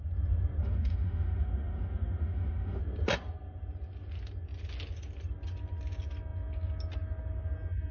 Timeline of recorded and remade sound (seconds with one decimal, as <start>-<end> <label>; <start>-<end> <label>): 0.0-0.6 recorded; 0.6-2.8 remade; 2.8-7.9 recorded